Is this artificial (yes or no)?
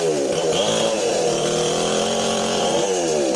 yes